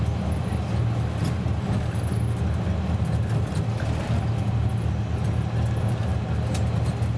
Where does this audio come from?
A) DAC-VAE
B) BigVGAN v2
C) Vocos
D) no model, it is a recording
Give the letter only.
D